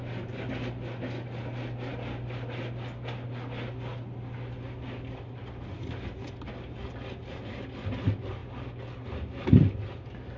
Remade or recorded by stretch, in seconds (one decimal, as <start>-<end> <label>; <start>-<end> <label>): 0.0-10.4 recorded